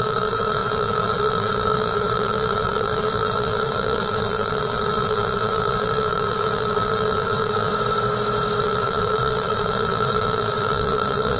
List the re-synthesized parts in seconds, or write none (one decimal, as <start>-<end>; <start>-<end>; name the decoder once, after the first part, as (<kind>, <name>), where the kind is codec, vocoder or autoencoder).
0.0-7.7 (vocoder, WaveNeXt); 8.6-11.4